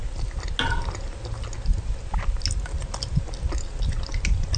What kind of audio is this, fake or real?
real